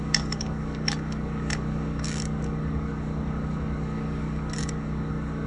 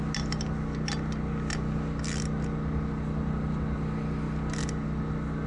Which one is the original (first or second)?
second